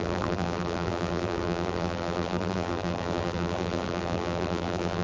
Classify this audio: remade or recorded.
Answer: remade